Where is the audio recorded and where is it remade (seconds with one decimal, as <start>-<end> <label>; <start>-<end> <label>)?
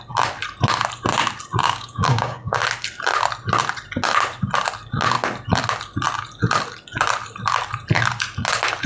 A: 0.0-1.6 recorded; 1.6-2.6 remade; 2.6-8.9 recorded